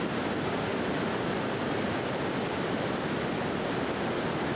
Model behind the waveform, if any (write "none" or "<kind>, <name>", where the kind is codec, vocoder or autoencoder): none